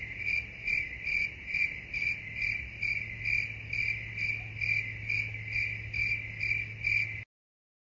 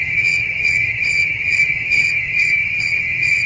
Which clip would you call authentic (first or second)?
first